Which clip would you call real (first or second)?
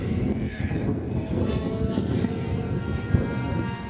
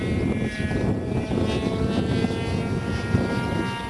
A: second